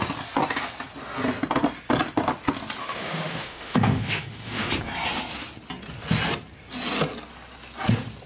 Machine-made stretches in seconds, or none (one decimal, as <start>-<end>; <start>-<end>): 2.8-4.7